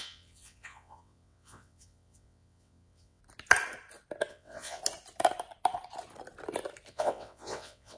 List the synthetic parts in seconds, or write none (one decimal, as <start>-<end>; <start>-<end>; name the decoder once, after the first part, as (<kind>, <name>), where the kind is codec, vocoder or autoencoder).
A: 0.0-3.2 (vocoder, WaveNeXt); 4.3-4.8; 6.9-8.0